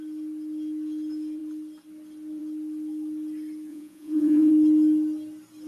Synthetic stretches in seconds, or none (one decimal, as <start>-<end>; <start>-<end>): 3.7-4.5